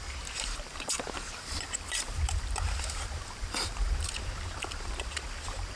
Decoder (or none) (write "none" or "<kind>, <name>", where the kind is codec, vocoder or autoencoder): vocoder, BigVGAN v2